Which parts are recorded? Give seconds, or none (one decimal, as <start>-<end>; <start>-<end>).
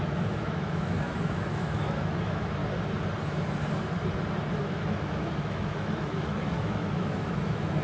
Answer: 2.6-4.6